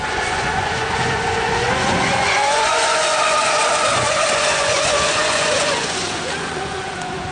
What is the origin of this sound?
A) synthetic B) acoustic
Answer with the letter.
A